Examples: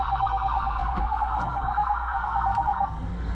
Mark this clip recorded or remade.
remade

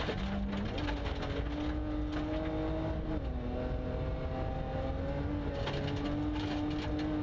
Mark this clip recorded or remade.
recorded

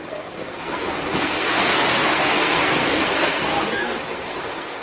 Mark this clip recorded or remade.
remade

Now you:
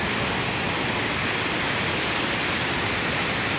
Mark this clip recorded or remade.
recorded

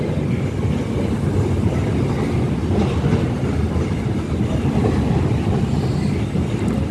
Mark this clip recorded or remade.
recorded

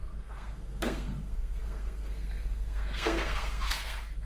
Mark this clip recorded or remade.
remade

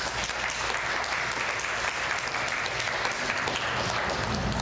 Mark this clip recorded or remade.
recorded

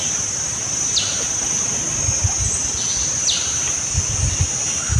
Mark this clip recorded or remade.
recorded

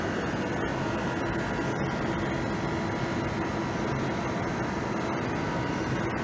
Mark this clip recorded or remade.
recorded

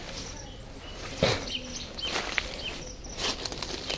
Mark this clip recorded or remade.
recorded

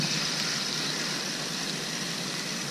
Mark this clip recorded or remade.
recorded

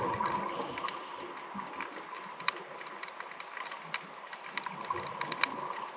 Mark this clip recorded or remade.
recorded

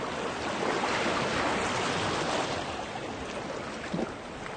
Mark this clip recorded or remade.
recorded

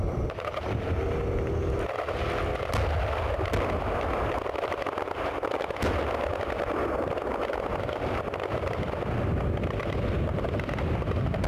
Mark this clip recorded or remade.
recorded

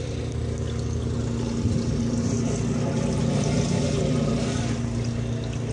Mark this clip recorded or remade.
recorded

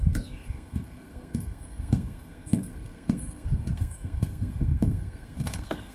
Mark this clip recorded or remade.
remade